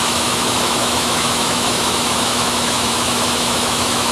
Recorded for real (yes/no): no